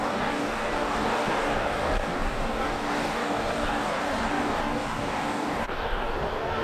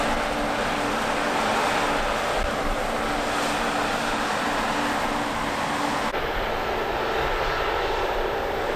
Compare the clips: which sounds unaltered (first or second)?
second